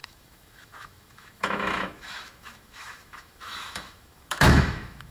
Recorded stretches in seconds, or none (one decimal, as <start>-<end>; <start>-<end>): none